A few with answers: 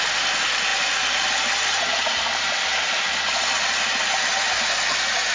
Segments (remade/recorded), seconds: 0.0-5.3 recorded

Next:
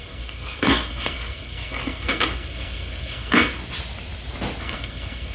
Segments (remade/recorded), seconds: 0.0-3.6 remade; 3.6-4.6 recorded; 4.6-5.3 remade

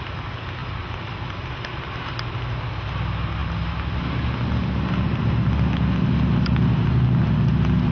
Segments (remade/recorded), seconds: 0.0-0.6 recorded; 0.6-2.3 remade; 2.3-7.9 recorded

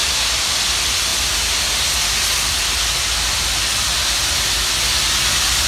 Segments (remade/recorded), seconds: 0.0-5.7 recorded

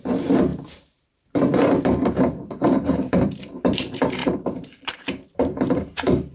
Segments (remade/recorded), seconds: 0.0-6.3 remade